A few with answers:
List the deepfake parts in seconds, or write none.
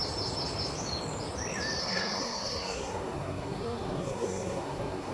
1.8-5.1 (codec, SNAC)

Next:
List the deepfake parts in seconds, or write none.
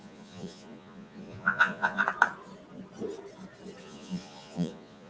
0.0-2.0 (vocoder, Vocos); 3.8-5.1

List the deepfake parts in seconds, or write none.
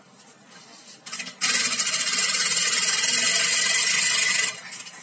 2.4-3.9 (vocoder, BigVGAN v2)